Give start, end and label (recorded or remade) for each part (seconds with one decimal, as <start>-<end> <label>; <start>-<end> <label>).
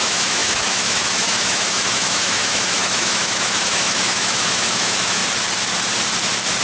0.0-5.2 remade; 5.2-6.6 recorded